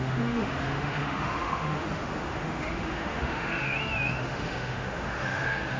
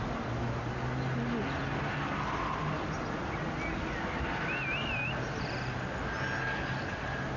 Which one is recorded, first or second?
second